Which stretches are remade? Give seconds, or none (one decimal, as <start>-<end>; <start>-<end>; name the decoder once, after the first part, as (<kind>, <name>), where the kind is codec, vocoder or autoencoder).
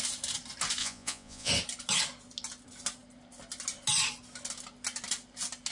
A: 0.8-1.5 (vocoder, Vocos)